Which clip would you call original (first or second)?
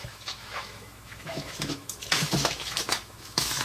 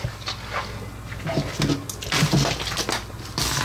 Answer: second